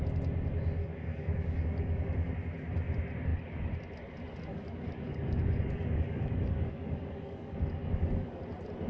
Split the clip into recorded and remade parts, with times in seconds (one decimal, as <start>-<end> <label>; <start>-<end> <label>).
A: 0.0-0.8 recorded; 0.8-2.3 remade; 2.3-4.5 recorded; 4.5-8.4 remade; 8.4-8.9 recorded